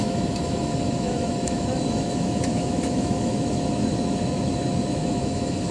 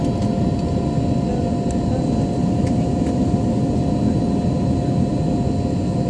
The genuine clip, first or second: second